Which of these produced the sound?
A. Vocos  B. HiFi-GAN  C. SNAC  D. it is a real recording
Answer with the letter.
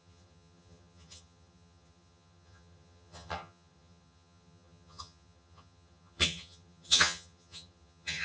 B